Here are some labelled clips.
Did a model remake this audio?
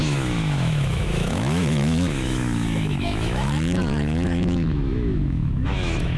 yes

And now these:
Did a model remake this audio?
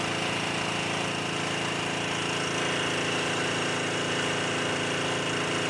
no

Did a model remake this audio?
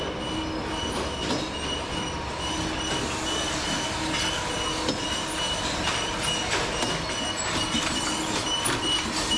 no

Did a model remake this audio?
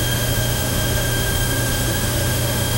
yes